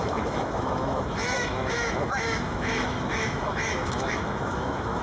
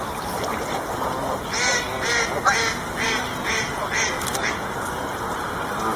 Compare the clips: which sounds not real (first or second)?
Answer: first